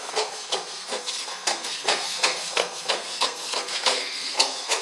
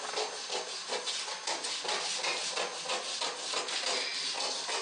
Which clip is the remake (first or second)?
first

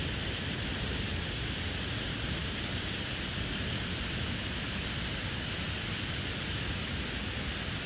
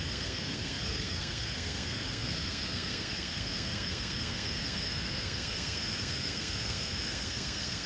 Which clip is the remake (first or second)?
second